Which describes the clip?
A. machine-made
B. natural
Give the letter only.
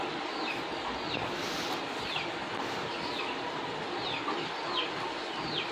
B